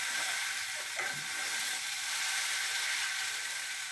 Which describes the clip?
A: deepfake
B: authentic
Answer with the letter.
A